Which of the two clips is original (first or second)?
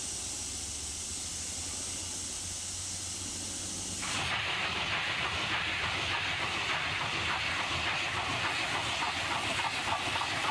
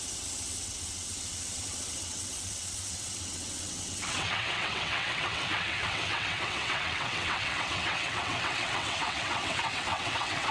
first